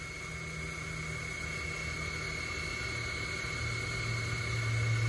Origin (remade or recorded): recorded